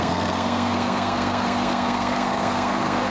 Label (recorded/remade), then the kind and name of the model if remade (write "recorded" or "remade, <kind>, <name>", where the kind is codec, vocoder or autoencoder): remade, codec, SNAC